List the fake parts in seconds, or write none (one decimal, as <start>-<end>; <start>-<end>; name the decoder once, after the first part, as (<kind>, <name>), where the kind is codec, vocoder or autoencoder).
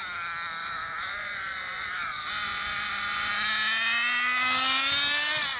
0.6-3.3 (vocoder, Vocos)